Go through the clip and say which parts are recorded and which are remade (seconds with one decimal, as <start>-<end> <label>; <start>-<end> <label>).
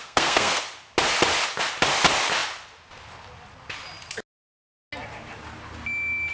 0.0-0.6 remade; 0.6-6.3 recorded